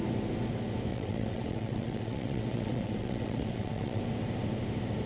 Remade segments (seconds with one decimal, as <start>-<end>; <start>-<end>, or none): 0.9-4.0